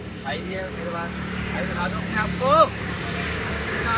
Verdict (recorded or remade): remade